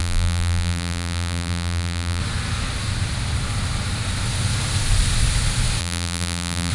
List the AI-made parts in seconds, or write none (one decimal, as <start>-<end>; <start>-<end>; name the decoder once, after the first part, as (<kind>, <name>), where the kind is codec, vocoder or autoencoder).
0.0-2.2 (vocoder, BigVGAN v2); 5.8-6.7